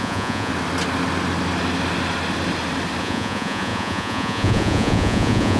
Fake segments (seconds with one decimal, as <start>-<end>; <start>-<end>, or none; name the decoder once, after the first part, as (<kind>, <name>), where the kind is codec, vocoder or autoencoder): 0.0-0.5 (vocoder, Vocos); 3.0-5.6